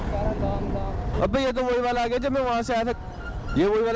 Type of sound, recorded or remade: recorded